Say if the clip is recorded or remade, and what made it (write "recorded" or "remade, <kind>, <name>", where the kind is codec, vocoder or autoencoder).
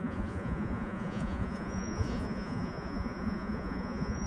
remade, vocoder, Vocos